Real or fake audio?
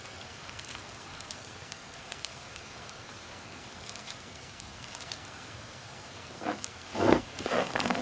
fake